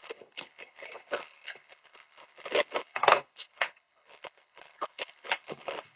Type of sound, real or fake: fake